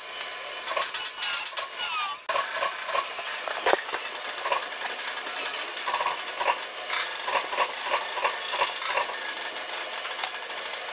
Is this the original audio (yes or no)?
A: yes